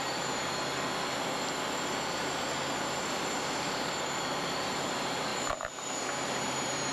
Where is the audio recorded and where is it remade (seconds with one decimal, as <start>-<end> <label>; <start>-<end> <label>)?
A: 0.0-0.4 remade; 0.4-3.0 recorded; 3.0-6.9 remade

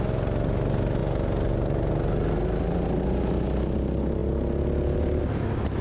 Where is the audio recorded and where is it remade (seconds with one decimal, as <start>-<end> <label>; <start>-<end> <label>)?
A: 0.0-5.8 recorded